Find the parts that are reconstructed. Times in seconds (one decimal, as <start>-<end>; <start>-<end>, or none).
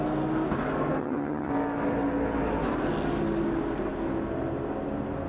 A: 1.0-1.5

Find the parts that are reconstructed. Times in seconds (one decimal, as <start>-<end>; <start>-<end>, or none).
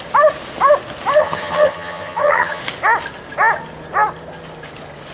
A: 1.2-2.6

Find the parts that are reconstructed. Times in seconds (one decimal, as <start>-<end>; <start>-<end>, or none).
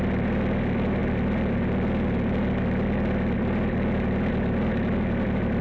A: none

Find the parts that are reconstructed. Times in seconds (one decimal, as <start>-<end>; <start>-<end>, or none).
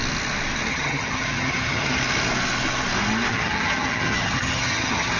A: 0.7-2.0; 3.3-5.2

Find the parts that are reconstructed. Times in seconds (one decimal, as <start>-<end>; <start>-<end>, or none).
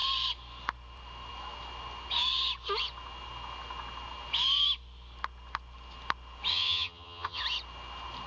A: 6.5-7.4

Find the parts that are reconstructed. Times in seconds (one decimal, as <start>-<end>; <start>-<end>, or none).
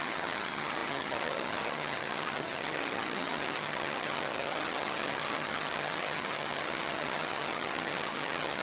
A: 0.0-8.6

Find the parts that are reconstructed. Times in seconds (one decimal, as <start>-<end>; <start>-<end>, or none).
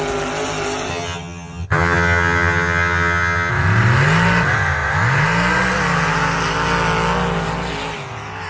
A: 0.9-3.5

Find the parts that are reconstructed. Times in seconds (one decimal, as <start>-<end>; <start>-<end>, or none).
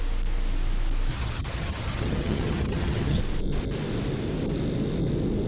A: 1.1-3.2